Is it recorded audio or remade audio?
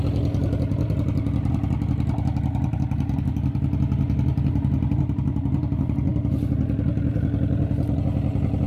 recorded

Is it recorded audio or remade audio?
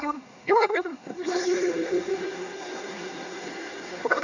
remade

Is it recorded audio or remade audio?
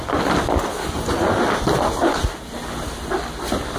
recorded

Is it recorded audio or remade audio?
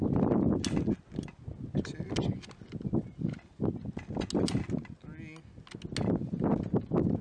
recorded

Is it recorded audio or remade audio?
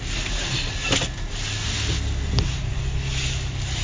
recorded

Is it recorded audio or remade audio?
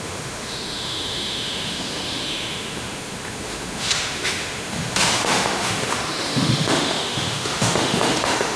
remade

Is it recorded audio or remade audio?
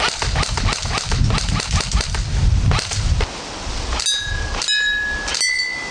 recorded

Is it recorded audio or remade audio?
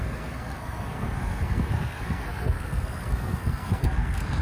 remade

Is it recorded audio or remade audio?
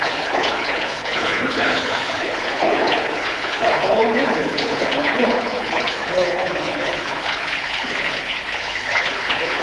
remade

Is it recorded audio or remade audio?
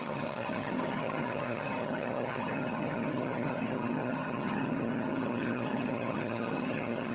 remade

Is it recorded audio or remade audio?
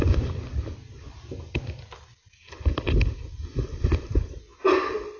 recorded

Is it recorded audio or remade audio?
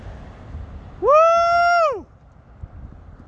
recorded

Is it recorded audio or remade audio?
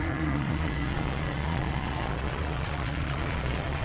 remade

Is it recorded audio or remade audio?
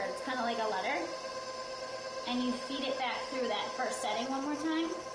recorded